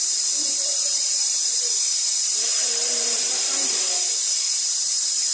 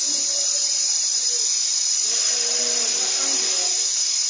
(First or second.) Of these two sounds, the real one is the second